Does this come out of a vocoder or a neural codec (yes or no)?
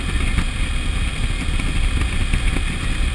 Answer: yes